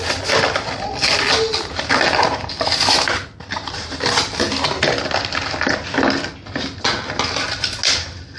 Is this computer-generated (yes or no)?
no